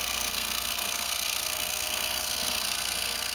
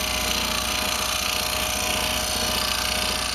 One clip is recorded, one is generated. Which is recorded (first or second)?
second